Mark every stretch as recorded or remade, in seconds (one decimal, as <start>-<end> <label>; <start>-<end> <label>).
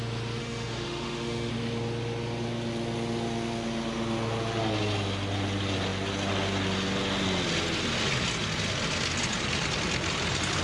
0.0-0.4 recorded; 0.4-1.5 remade; 1.5-10.6 recorded